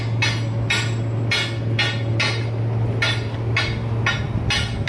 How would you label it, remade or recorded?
recorded